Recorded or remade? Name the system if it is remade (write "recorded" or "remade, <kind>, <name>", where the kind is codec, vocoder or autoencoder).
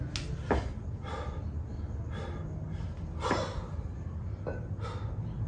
recorded